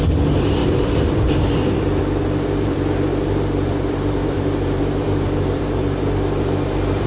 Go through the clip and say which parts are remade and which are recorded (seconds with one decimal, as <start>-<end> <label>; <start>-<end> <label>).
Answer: 0.0-7.1 remade